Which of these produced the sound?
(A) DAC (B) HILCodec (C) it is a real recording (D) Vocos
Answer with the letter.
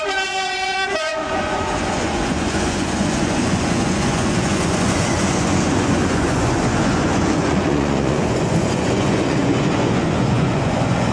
D